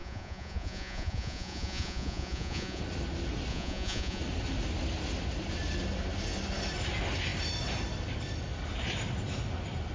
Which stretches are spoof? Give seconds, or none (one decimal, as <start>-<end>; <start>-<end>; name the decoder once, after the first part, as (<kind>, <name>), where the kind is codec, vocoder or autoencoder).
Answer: 0.0-2.8 (vocoder, Vocos); 3.5-4.2